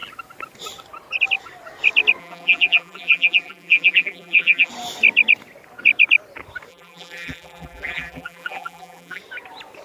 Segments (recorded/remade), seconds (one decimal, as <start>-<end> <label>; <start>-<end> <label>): 0.0-2.2 recorded; 2.2-4.7 remade; 4.7-6.7 recorded; 6.7-9.2 remade; 9.2-9.8 recorded

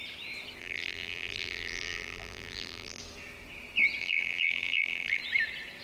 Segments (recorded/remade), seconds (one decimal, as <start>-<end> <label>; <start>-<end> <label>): 0.0-0.6 recorded; 0.6-3.0 remade; 3.0-4.0 recorded; 4.0-5.2 remade; 5.2-5.8 recorded

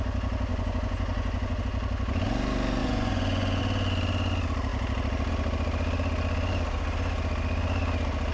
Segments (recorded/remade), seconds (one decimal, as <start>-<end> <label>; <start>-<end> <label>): 0.0-0.5 recorded; 0.5-1.6 remade; 1.6-2.8 recorded; 2.8-3.6 remade; 3.6-8.3 recorded

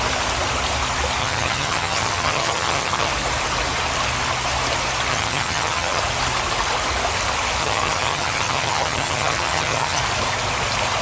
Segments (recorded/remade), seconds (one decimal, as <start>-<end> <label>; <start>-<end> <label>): 0.0-1.2 recorded; 1.2-3.1 remade; 3.1-5.1 recorded; 5.1-6.0 remade; 6.0-7.6 recorded; 7.6-10.0 remade; 10.0-11.0 recorded

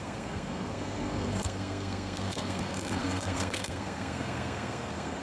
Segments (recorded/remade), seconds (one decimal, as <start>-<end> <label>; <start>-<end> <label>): 0.0-5.2 remade

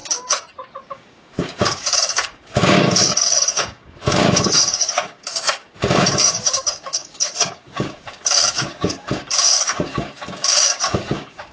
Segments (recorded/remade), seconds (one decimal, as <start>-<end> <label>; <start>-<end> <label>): 0.0-0.9 recorded; 0.9-11.5 remade

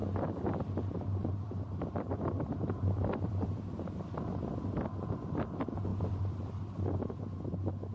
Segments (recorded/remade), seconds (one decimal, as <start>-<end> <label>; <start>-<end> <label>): 0.0-4.2 remade; 4.2-5.9 recorded; 5.9-6.8 remade; 6.8-7.9 recorded